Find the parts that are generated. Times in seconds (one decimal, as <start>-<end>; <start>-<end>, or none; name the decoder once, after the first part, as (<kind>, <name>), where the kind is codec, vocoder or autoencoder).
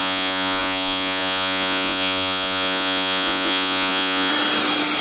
0.0-4.3 (vocoder, Vocos)